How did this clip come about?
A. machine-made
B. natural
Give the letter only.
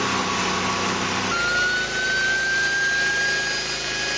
B